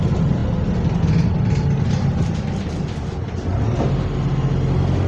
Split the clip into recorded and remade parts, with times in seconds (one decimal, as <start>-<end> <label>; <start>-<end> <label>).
0.0-5.1 recorded